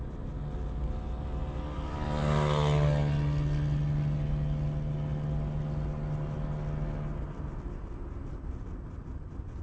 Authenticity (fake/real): real